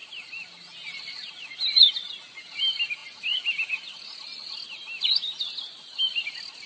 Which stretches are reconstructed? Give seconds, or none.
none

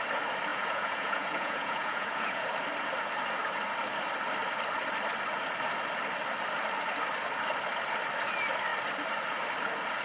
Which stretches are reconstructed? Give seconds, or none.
0.5-2.5 (vocoder, Vocos)

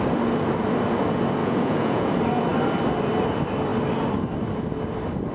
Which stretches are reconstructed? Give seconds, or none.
1.4-2.1 (vocoder, Vocos)

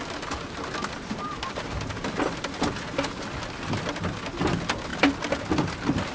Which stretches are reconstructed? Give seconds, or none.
none

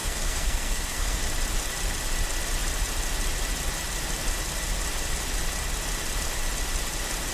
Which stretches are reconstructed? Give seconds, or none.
0.0-1.2 (codec, SNAC)

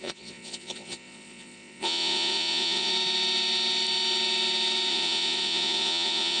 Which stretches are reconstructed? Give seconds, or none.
0.0-2.9 (vocoder, Vocos); 4.9-6.4